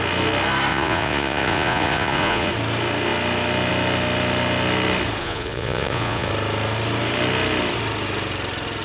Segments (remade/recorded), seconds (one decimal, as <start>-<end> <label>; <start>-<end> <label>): 0.0-0.7 recorded; 0.7-2.5 remade; 2.5-5.2 recorded; 5.2-6.3 remade; 6.3-8.8 recorded